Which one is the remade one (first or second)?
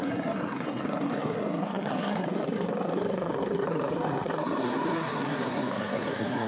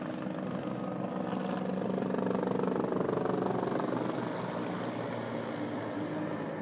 first